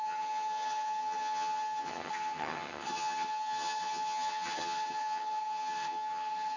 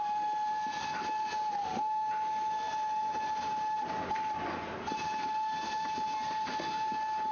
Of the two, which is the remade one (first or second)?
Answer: first